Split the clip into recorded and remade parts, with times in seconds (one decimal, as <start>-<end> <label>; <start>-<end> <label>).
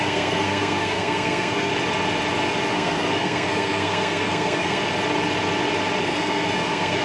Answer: 0.0-1.7 remade; 1.7-2.7 recorded; 2.7-4.8 remade; 4.8-6.0 recorded; 6.0-7.0 remade